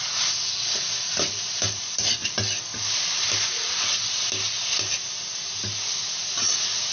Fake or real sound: real